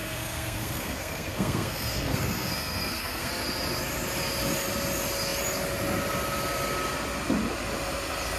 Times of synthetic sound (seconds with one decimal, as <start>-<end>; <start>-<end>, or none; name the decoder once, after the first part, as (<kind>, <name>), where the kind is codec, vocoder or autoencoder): 0.0-3.3 (codec, SNAC)